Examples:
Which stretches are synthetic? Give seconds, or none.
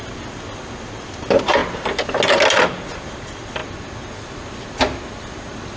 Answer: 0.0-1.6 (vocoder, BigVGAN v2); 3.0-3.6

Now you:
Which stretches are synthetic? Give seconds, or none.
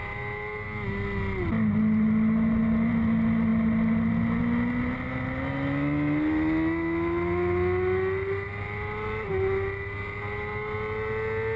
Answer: none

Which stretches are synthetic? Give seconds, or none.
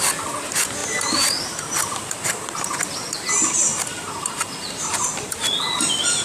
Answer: 3.7-5.5 (vocoder, BigVGAN v2)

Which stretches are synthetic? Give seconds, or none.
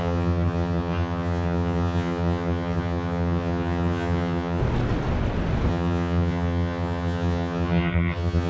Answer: 0.0-4.6 (vocoder, HiFi-GAN); 5.7-8.5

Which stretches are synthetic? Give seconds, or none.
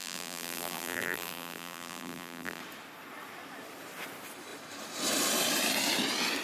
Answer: 0.0-2.6 (vocoder, BigVGAN v2)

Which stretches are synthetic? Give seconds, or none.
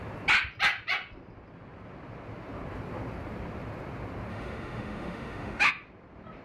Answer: 4.3-5.7 (autoencoder, DAC-VAE)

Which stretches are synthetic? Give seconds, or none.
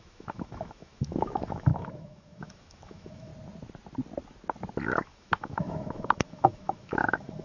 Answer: 0.0-3.3 (autoencoder, DAC-VAE); 4.8-7.4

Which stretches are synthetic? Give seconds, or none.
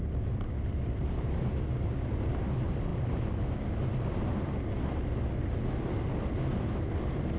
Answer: none